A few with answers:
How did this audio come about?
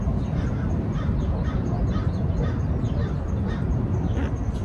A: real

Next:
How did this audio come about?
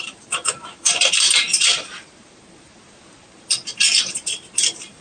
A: fake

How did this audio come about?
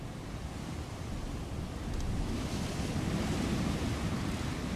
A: real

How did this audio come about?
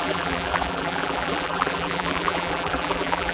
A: fake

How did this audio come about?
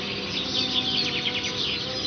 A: real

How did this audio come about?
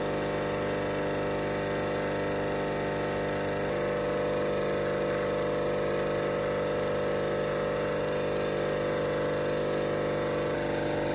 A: real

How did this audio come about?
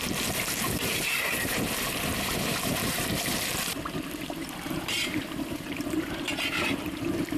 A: fake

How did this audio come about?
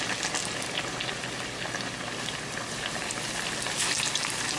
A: real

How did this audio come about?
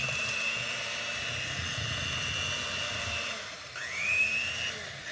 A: fake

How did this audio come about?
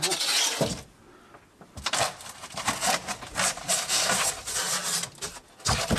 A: real